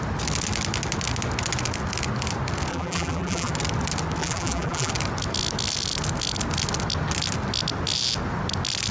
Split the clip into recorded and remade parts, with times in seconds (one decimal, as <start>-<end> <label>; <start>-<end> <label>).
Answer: 0.0-2.7 recorded; 2.7-3.5 remade; 3.5-4.2 recorded; 4.2-4.9 remade; 4.9-8.9 recorded

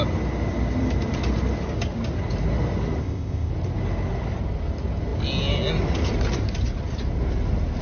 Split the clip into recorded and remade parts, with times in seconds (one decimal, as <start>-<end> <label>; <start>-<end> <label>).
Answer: 0.0-3.0 recorded; 3.0-3.5 remade; 3.5-7.8 recorded